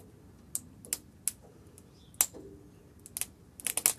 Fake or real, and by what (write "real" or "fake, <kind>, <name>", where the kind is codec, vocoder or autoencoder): real